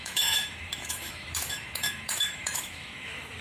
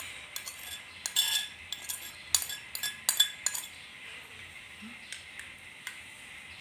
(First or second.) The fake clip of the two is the first